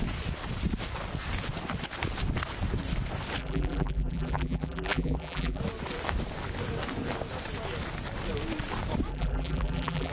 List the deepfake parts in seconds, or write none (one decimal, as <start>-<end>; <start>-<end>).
3.4-5.6; 9.1-10.1